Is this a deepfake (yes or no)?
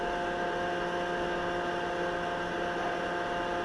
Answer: no